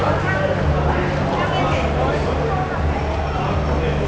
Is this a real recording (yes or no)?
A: yes